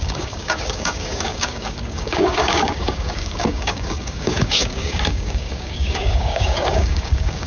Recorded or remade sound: remade